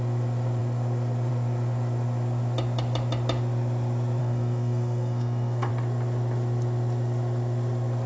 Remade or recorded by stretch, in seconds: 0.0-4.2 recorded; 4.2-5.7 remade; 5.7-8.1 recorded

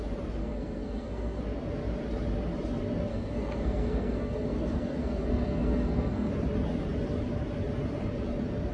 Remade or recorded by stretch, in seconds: 0.0-0.4 recorded; 0.4-1.4 remade; 1.4-3.1 recorded; 3.1-6.3 remade; 6.3-8.7 recorded